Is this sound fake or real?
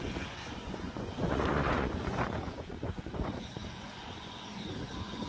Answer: fake